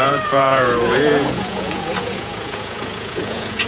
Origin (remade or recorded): remade